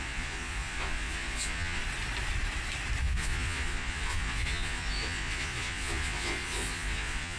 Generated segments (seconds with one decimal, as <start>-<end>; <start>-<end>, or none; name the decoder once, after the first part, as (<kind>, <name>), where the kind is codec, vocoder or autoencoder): 0.0-1.8 (vocoder, Vocos); 3.0-7.4